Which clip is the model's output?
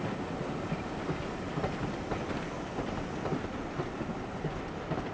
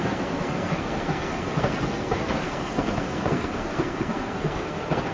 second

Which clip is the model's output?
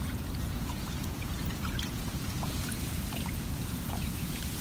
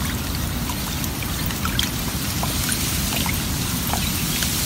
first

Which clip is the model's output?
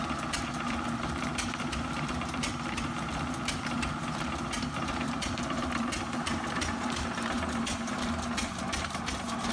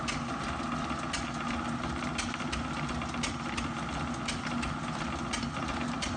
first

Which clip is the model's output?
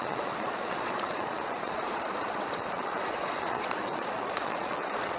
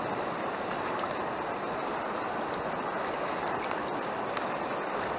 first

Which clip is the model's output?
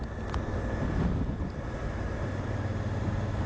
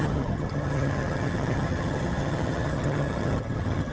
second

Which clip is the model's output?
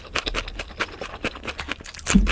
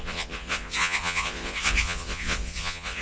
second